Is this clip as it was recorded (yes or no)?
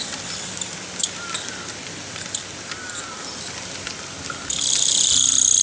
yes